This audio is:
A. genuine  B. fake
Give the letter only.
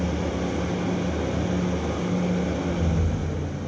A